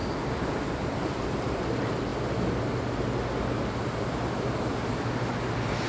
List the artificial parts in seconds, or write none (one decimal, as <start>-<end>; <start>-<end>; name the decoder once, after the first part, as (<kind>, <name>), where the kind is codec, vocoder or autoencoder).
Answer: 0.0-1.6 (vocoder, BigVGAN v2); 3.8-5.0